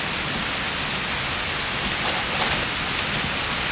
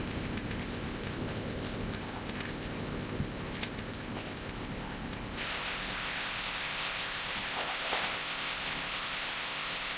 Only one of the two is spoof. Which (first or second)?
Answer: second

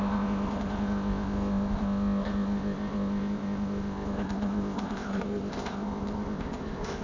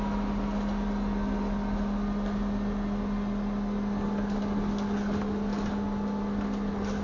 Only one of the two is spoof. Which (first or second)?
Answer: first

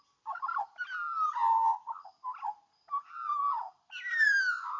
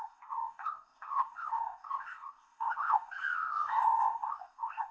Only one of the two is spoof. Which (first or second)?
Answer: second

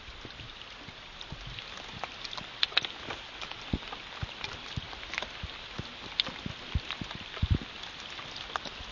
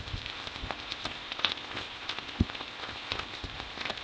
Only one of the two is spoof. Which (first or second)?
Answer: second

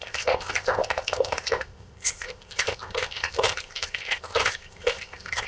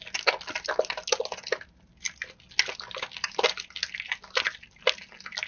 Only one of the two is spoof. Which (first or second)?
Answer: first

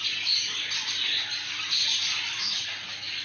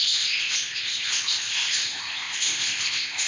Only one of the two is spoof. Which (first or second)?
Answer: second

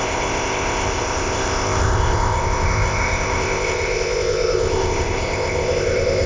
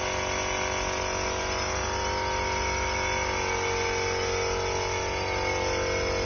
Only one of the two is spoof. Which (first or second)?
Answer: first